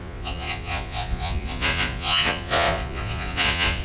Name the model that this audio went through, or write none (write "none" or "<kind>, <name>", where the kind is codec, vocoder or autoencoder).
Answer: vocoder, Vocos